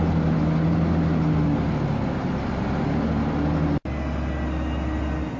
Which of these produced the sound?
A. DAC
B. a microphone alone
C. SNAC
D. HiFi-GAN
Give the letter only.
B